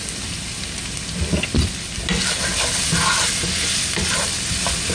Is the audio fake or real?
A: real